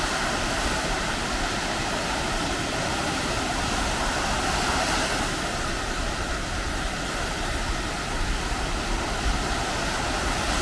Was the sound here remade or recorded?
recorded